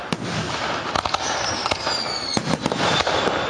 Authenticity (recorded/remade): recorded